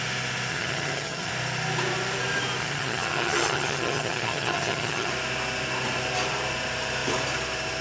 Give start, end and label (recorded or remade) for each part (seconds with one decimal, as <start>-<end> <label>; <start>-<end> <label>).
0.0-0.5 recorded; 0.5-1.3 remade; 1.3-2.6 recorded; 2.6-5.1 remade; 5.1-7.8 recorded